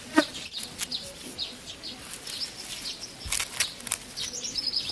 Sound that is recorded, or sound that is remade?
recorded